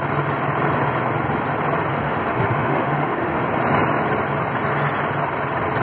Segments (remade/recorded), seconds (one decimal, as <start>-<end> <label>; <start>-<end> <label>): 0.0-1.9 recorded; 1.9-3.4 remade; 3.4-5.8 recorded